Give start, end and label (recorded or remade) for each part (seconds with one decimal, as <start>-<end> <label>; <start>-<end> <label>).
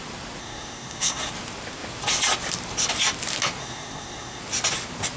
0.0-0.4 recorded; 0.4-1.3 remade; 1.3-3.6 recorded; 3.6-4.4 remade; 4.4-5.2 recorded